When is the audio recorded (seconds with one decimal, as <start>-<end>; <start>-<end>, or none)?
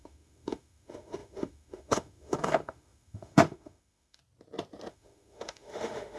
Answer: 4.2-4.9